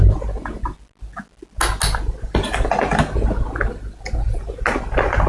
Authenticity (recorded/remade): recorded